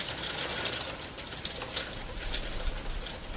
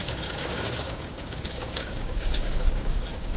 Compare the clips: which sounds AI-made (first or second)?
second